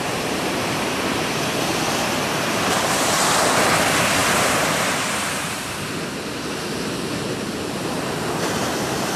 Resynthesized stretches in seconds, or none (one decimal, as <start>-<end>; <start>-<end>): 4.2-5.3